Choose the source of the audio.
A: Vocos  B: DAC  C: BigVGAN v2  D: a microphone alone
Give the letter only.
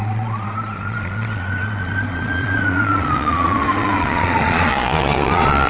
A